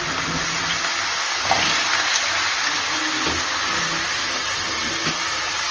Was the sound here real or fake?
real